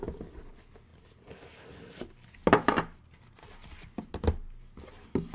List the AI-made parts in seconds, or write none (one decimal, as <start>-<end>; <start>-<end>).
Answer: none